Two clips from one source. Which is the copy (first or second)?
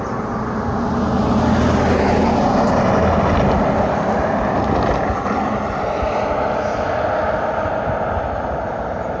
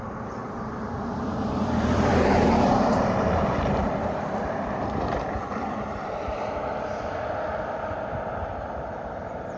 second